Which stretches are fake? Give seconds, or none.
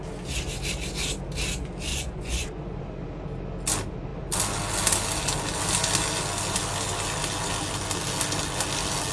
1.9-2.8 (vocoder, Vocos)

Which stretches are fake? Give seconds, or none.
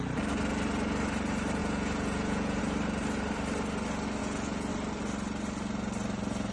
1.6-2.6 (vocoder, Vocos); 4.2-4.7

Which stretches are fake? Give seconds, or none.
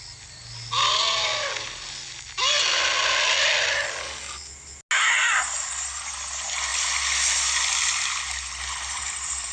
none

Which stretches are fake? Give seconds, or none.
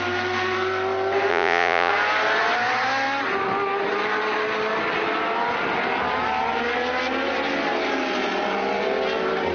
1.3-1.9 (vocoder, Vocos)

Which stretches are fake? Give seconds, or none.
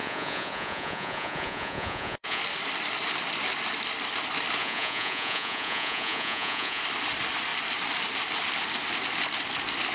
0.0-2.4 (vocoder, Vocos); 4.6-6.8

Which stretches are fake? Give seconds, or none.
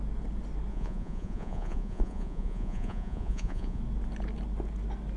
0.7-3.8 (vocoder, Vocos)